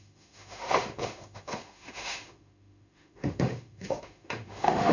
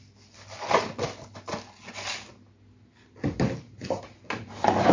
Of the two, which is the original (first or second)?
second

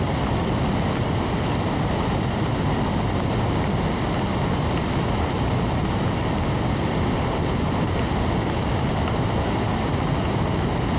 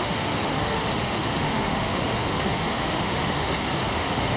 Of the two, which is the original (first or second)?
first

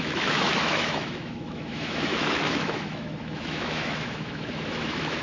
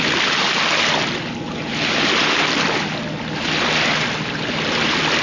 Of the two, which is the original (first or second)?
second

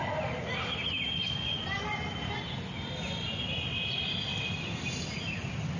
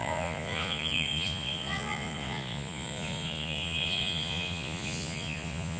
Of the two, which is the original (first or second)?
first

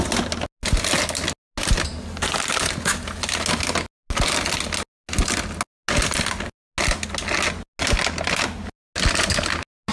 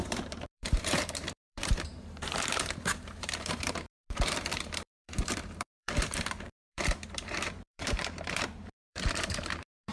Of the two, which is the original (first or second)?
first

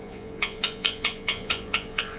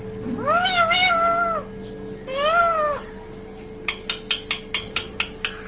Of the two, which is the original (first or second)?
second